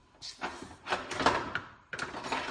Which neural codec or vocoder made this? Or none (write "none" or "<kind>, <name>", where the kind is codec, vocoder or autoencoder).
none